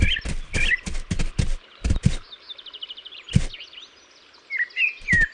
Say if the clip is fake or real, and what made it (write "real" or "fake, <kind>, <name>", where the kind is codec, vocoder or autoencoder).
real